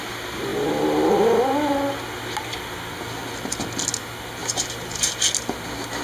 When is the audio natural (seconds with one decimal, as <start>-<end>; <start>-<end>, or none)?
0.0-4.4; 5.1-6.0